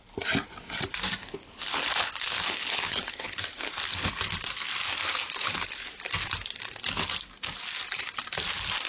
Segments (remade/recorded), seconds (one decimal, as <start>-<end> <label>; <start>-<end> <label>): 0.0-1.2 recorded; 1.2-3.7 remade; 3.7-8.9 recorded